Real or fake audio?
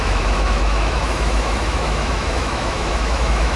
fake